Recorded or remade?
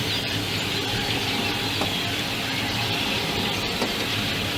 recorded